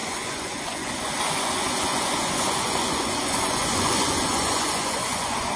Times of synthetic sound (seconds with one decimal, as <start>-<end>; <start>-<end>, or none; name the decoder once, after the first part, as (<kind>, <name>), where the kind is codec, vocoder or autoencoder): 0.0-5.6 (vocoder, Vocos)